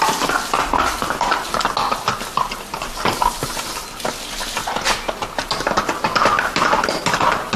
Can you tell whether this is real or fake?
real